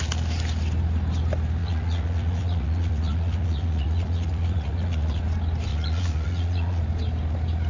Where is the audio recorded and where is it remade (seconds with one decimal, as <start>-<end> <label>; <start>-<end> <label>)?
0.0-1.6 recorded; 1.6-5.2 remade; 5.2-5.7 recorded; 5.7-6.8 remade; 6.8-7.7 recorded